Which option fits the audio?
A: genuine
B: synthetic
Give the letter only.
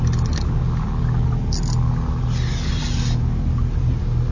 A